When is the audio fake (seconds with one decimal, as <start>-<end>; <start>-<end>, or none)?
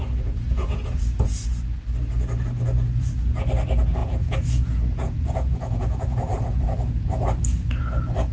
0.0-1.4; 4.0-7.0